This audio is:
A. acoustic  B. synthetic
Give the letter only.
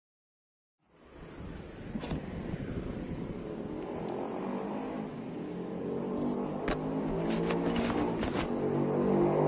A